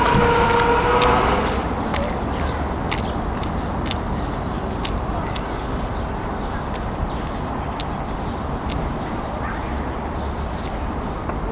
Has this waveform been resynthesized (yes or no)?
no